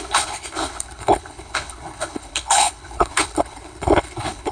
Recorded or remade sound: remade